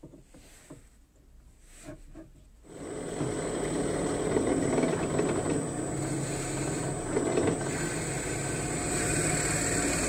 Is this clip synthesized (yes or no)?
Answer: no